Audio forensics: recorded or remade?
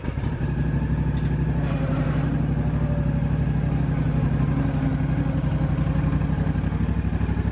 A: recorded